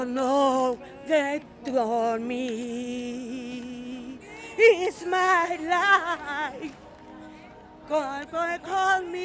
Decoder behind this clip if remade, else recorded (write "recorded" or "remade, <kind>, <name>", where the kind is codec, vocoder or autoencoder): recorded